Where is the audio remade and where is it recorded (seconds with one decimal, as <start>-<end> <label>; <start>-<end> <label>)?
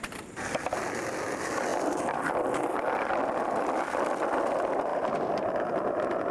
0.0-6.3 recorded